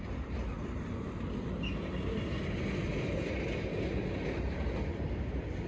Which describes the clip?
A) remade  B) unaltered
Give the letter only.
B